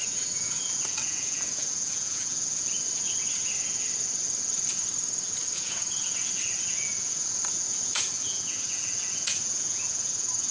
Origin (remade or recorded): remade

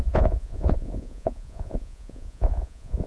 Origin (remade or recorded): remade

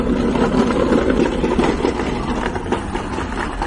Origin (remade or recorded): recorded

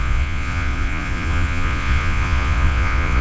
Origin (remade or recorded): remade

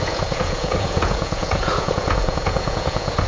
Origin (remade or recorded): remade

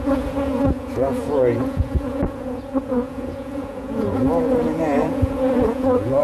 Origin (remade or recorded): remade